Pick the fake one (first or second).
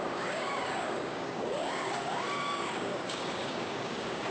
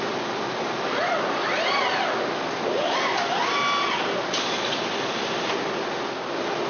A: first